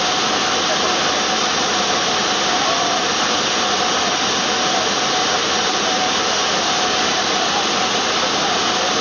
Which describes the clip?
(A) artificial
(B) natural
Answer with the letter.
B